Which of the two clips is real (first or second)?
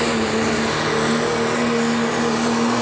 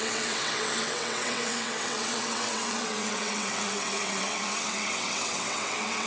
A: first